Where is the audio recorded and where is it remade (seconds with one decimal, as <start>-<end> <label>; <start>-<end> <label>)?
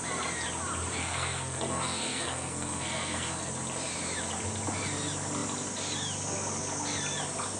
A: 0.0-1.0 recorded; 1.0-3.5 remade; 3.5-7.6 recorded